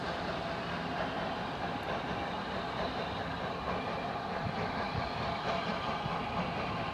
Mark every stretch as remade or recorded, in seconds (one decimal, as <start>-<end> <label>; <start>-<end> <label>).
0.0-6.9 recorded